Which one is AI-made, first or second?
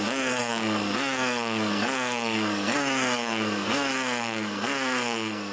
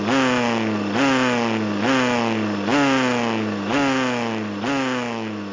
first